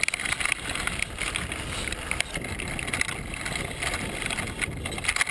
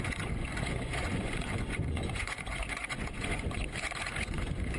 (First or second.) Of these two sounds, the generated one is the second